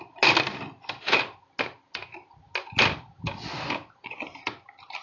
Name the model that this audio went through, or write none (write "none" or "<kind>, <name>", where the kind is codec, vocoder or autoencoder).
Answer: none